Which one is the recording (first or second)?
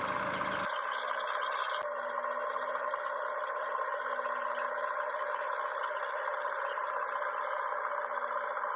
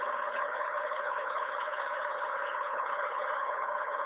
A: first